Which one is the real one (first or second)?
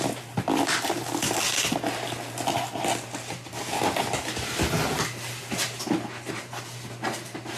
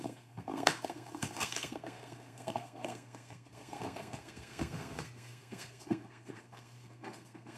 first